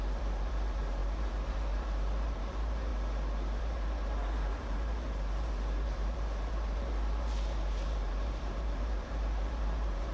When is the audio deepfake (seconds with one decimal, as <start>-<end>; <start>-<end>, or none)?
0.0-2.9; 3.6-10.1